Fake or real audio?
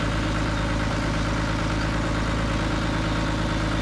real